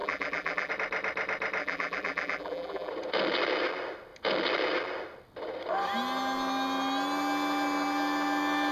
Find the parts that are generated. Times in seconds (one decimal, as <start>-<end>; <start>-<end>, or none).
0.0-0.7; 1.6-2.9